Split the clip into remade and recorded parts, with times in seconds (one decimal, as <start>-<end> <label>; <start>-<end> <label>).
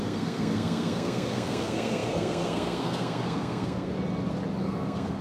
0.0-3.9 remade; 3.9-4.6 recorded; 4.6-5.2 remade